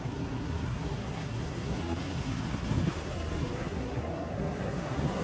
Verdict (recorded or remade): remade